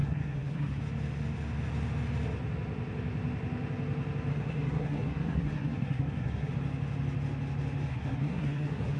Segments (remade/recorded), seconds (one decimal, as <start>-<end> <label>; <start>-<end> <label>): 0.0-0.8 remade; 0.8-4.3 recorded; 4.3-6.5 remade; 6.5-7.9 recorded; 7.9-9.0 remade